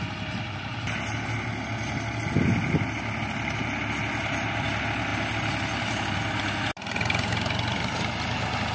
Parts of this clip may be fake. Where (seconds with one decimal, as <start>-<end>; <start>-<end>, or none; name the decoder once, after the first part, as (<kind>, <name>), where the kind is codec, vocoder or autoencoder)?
none

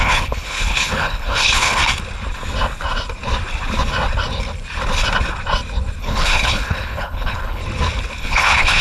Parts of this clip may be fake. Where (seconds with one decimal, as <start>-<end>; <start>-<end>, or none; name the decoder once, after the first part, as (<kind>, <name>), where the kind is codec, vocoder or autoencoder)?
0.0-1.8 (codec, HILCodec); 6.0-7.6; 8.2-8.8

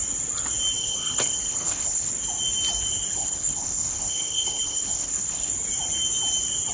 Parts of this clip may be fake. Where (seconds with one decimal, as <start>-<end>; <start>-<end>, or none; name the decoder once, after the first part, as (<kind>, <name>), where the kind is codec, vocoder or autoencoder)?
0.8-2.1 (codec, HILCodec); 3.1-5.5

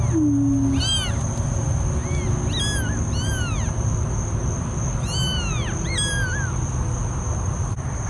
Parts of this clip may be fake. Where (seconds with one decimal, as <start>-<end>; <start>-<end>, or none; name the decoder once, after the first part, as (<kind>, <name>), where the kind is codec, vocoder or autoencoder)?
none

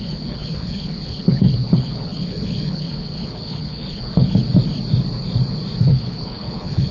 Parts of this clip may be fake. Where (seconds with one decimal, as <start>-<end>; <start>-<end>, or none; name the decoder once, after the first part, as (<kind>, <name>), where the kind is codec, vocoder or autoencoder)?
0.0-4.4 (codec, HILCodec); 5.8-6.9

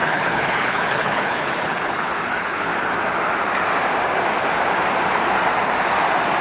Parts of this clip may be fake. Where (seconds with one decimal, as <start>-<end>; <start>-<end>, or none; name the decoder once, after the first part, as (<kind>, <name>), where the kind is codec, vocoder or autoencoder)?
0.0-2.7 (codec, HILCodec)